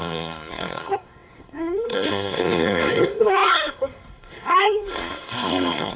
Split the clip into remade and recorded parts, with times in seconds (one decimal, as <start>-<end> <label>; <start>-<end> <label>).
0.0-6.0 remade